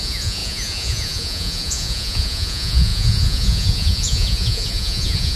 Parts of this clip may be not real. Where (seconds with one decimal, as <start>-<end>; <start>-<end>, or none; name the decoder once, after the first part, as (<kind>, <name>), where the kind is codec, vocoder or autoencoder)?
0.0-5.4 (vocoder, Vocos)